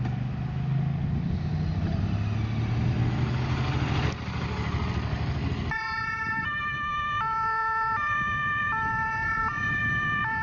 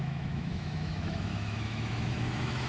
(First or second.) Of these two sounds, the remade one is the second